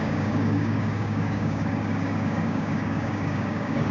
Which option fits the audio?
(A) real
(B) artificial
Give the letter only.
B